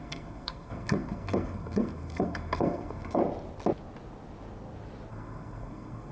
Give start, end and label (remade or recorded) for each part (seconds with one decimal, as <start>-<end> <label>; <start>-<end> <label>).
0.0-3.2 remade; 3.2-5.1 recorded; 5.1-6.1 remade